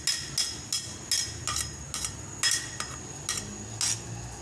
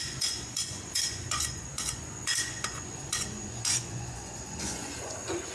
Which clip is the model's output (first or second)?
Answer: second